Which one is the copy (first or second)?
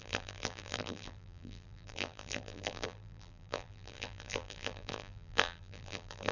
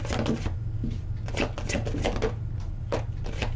first